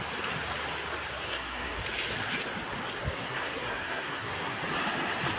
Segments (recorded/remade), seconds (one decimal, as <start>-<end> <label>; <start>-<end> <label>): 0.0-1.2 recorded; 1.2-1.8 remade; 1.8-3.0 recorded; 3.0-4.6 remade; 4.6-5.4 recorded